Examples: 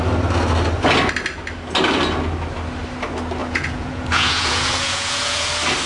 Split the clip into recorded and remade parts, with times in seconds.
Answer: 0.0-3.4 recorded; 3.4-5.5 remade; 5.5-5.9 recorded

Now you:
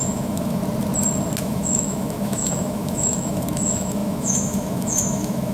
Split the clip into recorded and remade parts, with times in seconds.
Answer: 0.0-0.6 remade; 0.6-1.4 recorded; 1.4-5.5 remade